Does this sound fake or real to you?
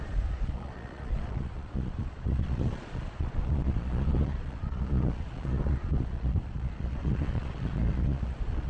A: fake